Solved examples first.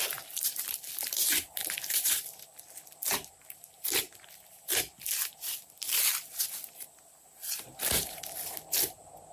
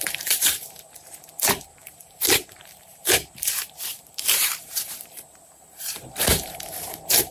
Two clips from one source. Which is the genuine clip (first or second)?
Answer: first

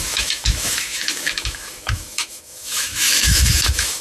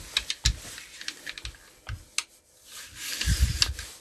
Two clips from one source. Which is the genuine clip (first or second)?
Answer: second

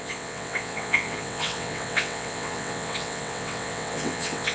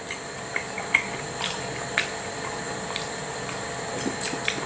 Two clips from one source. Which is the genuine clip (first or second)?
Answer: second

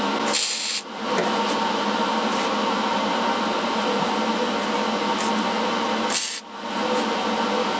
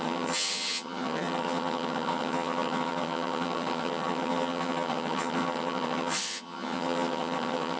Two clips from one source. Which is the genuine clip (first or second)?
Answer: first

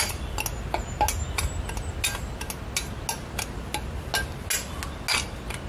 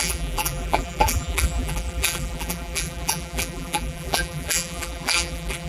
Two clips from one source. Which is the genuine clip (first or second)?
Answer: first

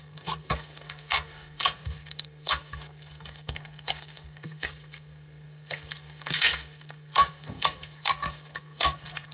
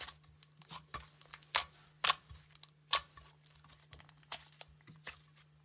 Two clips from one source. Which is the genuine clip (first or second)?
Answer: second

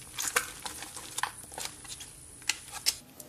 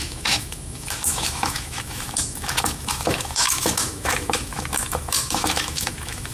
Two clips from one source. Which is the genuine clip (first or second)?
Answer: first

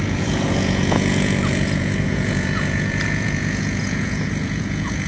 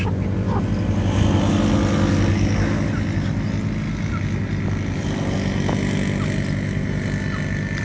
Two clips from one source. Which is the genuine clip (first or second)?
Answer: second